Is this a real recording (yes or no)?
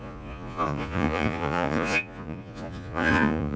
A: no